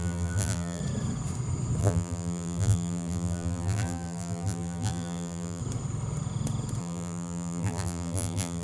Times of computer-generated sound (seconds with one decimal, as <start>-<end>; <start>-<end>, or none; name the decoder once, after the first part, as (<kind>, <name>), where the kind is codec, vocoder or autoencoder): 0.0-0.8 (vocoder, BigVGAN v2); 1.8-5.6; 6.8-8.6